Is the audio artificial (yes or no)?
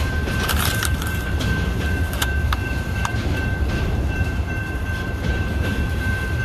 yes